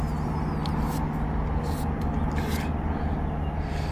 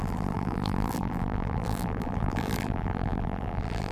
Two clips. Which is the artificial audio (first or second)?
second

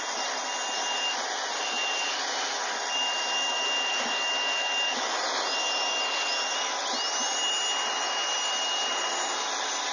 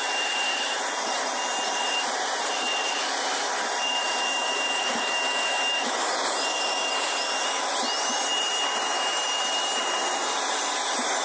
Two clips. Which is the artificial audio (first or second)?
second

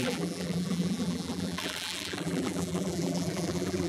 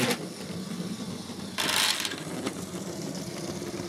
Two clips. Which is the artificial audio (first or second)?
first